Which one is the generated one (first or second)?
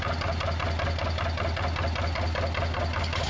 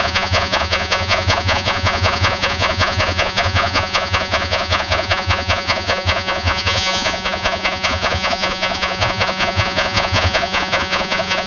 second